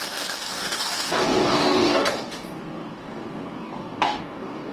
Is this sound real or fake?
fake